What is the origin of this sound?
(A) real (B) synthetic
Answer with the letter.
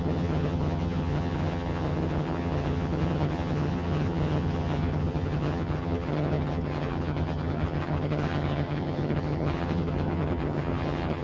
B